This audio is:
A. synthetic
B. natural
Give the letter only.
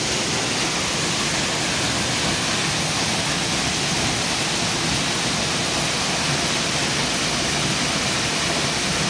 B